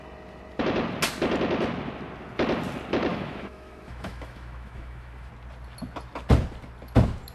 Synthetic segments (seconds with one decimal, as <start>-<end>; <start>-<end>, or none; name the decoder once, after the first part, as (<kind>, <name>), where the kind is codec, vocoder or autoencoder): 3.1-5.3 (autoencoder, DAC-VAE)